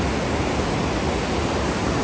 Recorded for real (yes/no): yes